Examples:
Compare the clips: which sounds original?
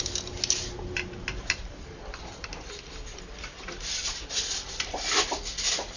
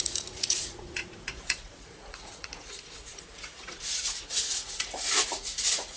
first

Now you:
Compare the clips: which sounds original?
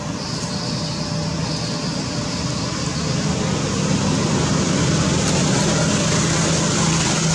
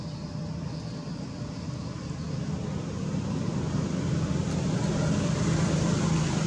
first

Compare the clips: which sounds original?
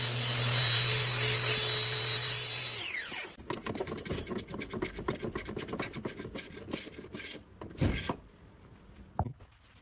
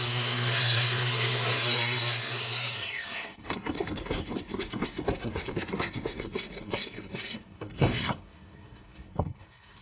first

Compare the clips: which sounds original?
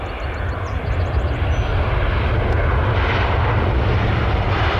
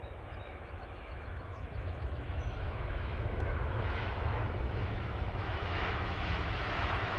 first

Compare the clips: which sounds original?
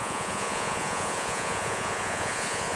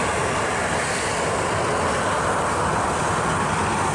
second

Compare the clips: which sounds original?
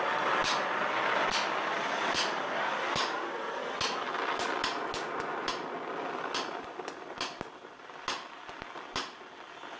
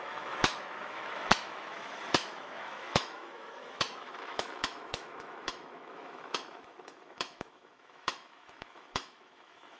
first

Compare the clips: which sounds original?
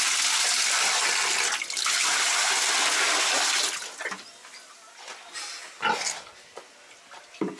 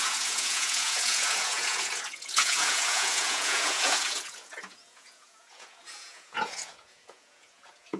first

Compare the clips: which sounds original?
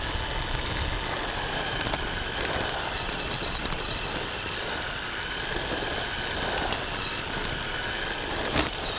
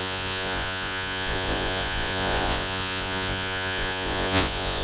first